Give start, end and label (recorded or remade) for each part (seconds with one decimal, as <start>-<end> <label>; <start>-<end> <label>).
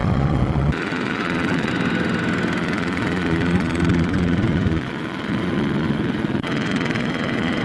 0.0-1.7 remade; 1.7-2.6 recorded; 2.6-7.6 remade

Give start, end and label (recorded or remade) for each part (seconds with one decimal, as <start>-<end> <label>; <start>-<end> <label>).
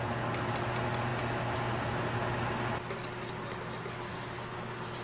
0.0-5.0 recorded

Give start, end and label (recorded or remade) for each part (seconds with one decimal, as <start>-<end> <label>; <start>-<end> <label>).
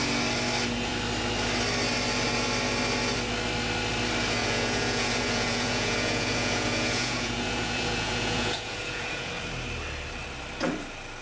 0.0-4.4 recorded; 4.4-9.3 remade; 9.3-11.2 recorded